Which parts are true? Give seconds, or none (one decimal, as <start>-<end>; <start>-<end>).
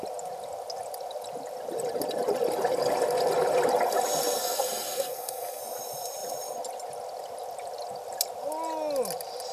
0.0-4.4; 5.6-9.5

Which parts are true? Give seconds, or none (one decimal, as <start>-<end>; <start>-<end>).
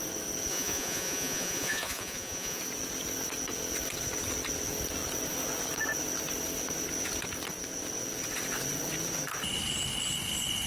0.0-0.5; 2.6-10.7